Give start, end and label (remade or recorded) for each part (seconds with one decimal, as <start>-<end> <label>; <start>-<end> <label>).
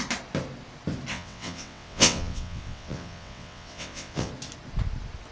0.0-1.1 recorded; 1.1-4.3 remade; 4.3-5.3 recorded